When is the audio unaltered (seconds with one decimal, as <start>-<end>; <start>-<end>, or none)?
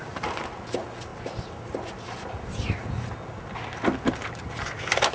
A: 0.0-5.1